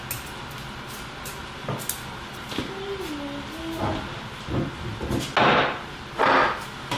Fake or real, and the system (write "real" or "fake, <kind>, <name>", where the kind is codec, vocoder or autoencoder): real